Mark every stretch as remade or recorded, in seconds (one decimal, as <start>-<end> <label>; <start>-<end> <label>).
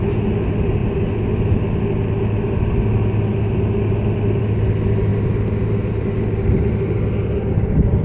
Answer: 0.0-8.0 recorded